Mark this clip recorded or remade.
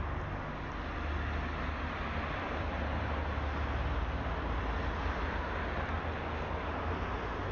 recorded